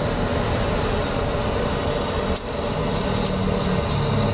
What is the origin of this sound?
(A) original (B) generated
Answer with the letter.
A